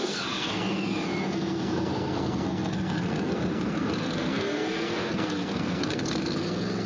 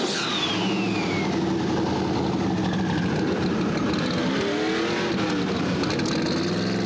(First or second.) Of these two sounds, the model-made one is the first